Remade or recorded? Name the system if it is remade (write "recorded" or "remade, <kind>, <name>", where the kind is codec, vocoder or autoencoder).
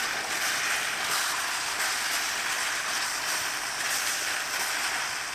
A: recorded